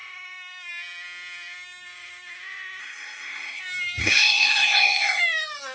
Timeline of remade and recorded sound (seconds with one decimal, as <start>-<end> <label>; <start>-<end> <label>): 0.0-2.8 recorded; 2.8-3.6 remade; 3.6-4.0 recorded; 4.0-5.2 remade; 5.2-5.7 recorded